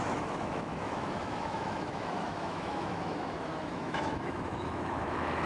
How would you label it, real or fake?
fake